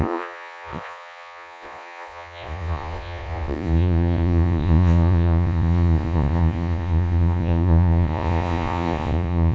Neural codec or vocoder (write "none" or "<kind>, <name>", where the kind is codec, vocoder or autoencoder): vocoder, Vocos